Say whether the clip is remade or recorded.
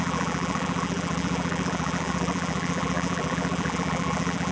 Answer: remade